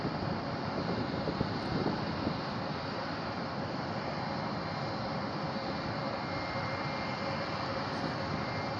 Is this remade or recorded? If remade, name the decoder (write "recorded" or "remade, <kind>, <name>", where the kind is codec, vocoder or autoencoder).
remade, vocoder, BigVGAN v2